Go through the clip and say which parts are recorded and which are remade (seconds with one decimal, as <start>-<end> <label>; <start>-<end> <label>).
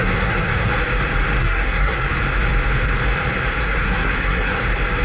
0.0-0.7 remade; 0.7-1.4 recorded; 1.4-2.1 remade; 2.1-3.6 recorded; 3.6-4.6 remade; 4.6-5.0 recorded